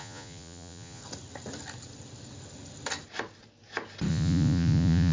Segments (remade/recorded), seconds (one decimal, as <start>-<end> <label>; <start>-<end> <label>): 0.0-1.0 remade; 1.0-4.1 recorded; 4.1-5.1 remade